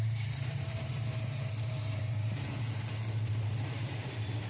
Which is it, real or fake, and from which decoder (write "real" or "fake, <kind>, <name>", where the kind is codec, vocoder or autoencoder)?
fake, vocoder, BigVGAN v2